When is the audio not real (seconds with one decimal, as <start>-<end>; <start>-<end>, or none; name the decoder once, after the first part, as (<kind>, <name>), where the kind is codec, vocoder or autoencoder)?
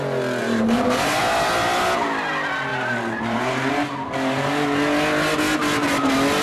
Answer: 0.4-1.2 (vocoder, BigVGAN v2); 2.7-3.7